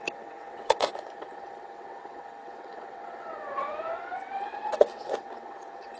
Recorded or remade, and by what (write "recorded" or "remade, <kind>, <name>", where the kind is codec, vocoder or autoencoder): remade, vocoder, WaveNeXt